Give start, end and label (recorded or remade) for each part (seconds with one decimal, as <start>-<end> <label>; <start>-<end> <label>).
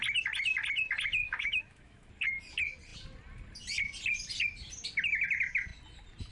0.0-1.2 recorded; 1.2-2.1 remade; 2.1-6.3 recorded